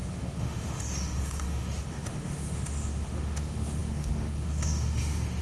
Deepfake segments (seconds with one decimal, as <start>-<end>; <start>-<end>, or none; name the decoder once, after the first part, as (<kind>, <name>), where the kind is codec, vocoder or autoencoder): 0.0-5.4 (autoencoder, DAC-VAE)